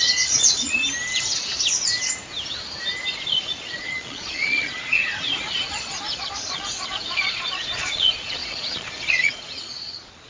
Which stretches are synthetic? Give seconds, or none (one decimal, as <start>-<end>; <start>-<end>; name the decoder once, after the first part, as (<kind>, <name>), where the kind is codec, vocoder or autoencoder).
0.0-0.8 (vocoder, Vocos); 3.4-5.0; 5.7-10.3